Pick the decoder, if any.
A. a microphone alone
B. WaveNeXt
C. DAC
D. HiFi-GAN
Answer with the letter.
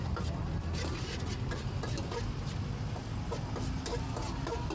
A